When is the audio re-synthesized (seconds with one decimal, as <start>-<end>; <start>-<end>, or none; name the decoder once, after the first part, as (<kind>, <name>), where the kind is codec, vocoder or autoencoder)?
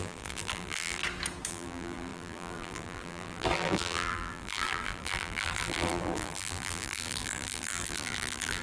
0.0-1.0 (vocoder, BigVGAN v2); 1.5-8.6